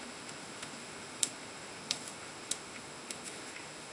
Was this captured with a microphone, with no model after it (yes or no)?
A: no